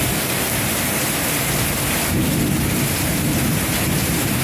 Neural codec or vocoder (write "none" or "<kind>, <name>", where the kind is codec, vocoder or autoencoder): vocoder, BigVGAN v2